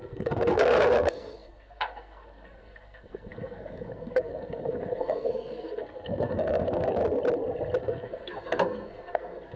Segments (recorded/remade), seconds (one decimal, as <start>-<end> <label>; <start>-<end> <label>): 0.0-7.0 remade; 7.0-7.8 recorded; 7.8-9.6 remade